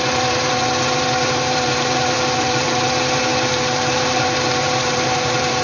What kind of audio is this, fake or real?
fake